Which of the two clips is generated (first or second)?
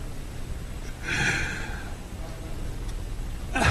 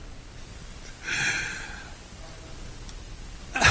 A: first